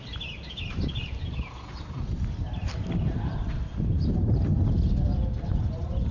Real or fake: real